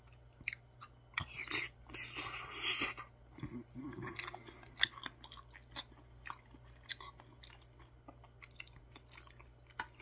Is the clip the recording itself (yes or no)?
yes